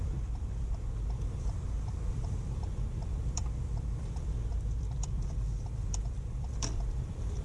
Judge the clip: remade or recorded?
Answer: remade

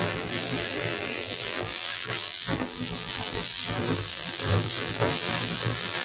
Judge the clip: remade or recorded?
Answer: remade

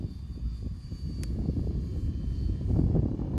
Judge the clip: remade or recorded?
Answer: recorded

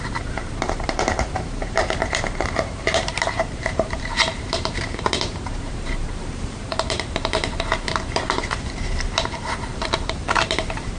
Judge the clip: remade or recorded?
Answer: remade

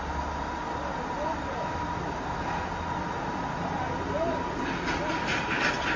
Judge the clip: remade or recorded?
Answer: recorded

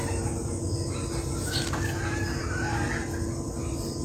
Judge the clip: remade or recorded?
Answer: recorded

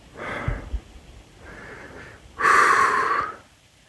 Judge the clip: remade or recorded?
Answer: remade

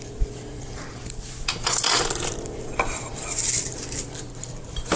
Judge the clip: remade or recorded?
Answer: remade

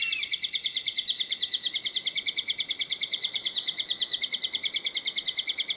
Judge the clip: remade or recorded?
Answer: remade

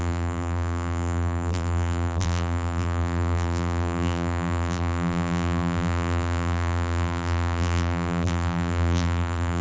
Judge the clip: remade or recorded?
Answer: remade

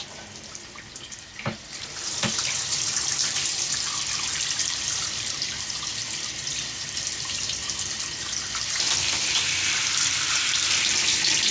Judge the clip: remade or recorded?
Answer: remade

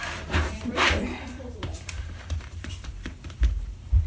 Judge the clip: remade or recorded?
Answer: remade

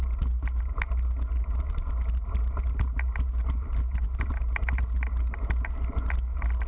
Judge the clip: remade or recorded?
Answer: recorded